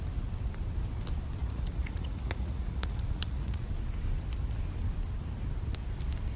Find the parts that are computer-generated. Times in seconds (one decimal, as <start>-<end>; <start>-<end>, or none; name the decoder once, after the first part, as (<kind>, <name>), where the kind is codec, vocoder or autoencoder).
1.4-3.7 (vocoder, Vocos)